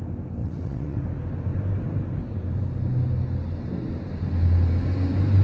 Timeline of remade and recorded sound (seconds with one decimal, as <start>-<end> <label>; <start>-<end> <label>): 0.0-0.4 recorded; 0.4-1.0 remade; 1.0-5.4 recorded